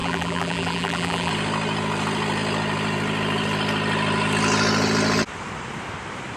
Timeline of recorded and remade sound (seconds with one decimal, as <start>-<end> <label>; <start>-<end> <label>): 0.0-1.3 remade; 1.3-6.4 recorded

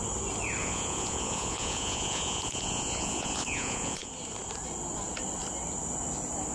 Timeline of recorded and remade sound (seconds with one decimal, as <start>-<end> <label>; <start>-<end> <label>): 0.0-0.6 recorded; 0.6-4.1 remade; 4.1-6.5 recorded

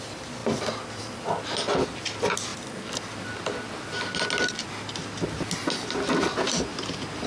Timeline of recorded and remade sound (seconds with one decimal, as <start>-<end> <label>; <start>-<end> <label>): 0.0-7.3 recorded

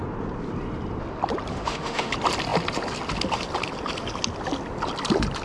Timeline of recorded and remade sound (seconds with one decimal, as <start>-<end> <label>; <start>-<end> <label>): 0.0-1.5 recorded; 1.5-2.1 remade; 2.1-5.4 recorded

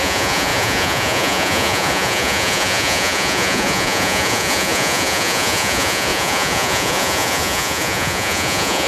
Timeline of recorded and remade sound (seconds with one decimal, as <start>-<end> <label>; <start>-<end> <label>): 0.0-8.9 remade

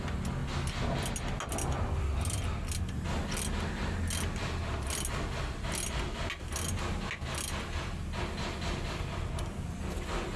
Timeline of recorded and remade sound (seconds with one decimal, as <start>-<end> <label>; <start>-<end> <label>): 0.0-10.4 recorded

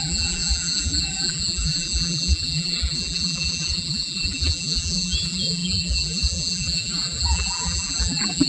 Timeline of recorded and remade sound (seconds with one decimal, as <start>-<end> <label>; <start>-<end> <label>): 0.0-8.5 remade

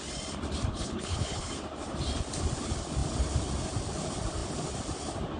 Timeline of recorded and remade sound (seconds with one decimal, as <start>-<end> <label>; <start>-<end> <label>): 0.0-0.7 recorded; 0.7-1.5 remade; 1.5-5.4 recorded